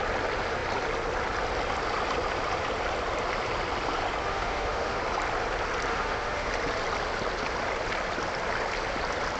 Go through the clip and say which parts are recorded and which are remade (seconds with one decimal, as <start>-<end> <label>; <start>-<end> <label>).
0.0-4.2 recorded; 4.2-5.0 remade; 5.0-5.9 recorded; 5.9-6.5 remade; 6.5-9.4 recorded